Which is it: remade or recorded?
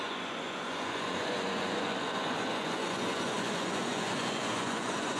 remade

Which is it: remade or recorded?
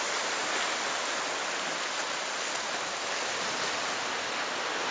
recorded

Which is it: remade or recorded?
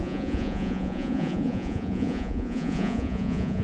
remade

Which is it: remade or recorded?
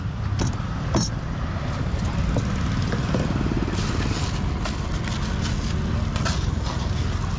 recorded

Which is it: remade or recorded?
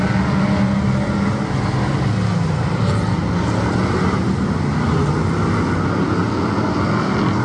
recorded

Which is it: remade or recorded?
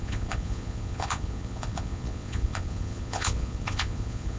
remade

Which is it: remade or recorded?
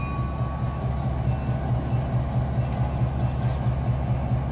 recorded